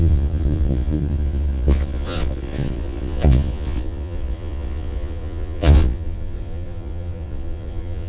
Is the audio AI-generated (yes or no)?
yes